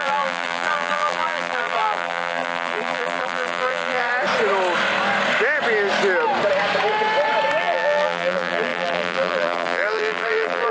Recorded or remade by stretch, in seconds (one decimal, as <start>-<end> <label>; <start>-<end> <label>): 0.0-4.1 remade; 4.1-7.6 recorded; 7.6-10.7 remade

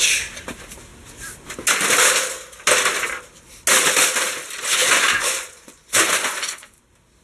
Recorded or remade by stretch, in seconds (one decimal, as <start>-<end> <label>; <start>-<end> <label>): 0.0-4.8 recorded; 4.8-6.8 remade; 6.8-7.2 recorded

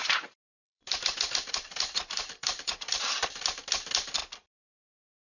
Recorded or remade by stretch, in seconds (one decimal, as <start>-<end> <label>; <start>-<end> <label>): 0.0-3.2 remade; 3.2-5.3 recorded

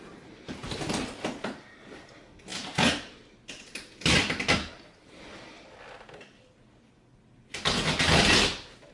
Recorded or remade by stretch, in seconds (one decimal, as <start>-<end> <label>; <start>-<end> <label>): 0.0-8.9 recorded